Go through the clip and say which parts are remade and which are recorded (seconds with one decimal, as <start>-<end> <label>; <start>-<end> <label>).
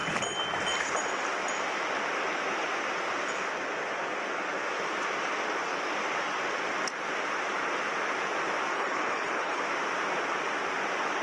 0.0-8.7 recorded; 8.7-9.6 remade; 9.6-11.2 recorded